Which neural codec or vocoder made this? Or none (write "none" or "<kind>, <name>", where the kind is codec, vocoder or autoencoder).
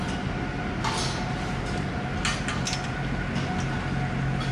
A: none